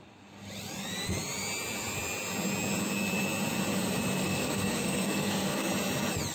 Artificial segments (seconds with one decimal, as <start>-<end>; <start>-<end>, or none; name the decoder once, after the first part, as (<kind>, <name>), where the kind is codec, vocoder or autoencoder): 4.2-5.7 (codec, SNAC)